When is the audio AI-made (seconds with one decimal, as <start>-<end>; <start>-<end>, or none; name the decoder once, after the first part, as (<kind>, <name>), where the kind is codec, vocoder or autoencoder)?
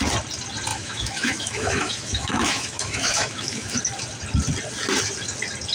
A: 0.7-3.8 (autoencoder, DAC-VAE)